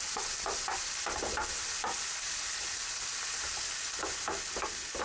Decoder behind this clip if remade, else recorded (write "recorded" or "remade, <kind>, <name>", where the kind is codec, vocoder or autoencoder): recorded